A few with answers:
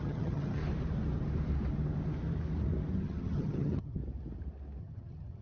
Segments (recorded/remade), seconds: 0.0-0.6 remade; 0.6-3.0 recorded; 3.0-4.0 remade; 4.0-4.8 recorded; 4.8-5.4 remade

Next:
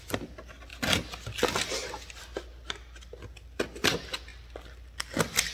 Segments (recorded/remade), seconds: 0.0-5.5 recorded

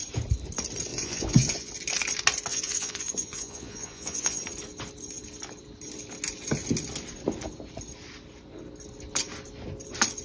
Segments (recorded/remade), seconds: 0.0-0.9 recorded; 0.9-1.7 remade; 1.7-2.5 recorded; 2.5-4.4 remade; 4.4-10.2 recorded

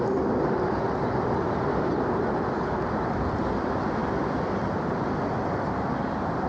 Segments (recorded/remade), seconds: 0.0-6.5 recorded

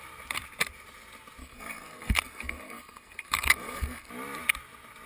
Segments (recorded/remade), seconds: 0.0-1.4 recorded; 1.4-4.1 remade; 4.1-5.1 recorded

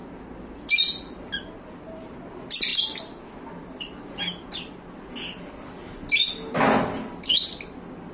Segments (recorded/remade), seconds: 0.0-1.0 remade; 1.0-2.7 recorded; 2.7-4.2 remade; 4.2-8.1 recorded